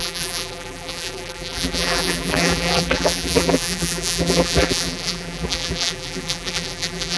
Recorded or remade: remade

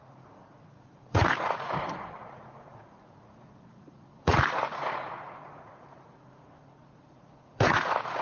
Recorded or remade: remade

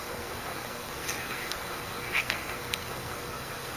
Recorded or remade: remade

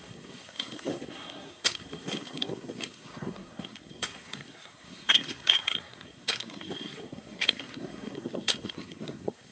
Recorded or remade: remade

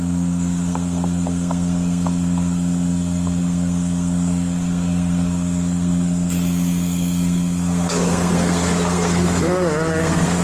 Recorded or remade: remade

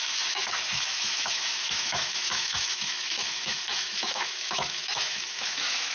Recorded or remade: remade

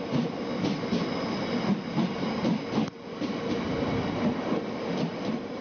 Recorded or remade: recorded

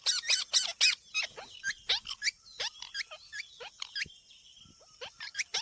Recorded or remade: recorded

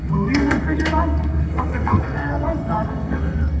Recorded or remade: remade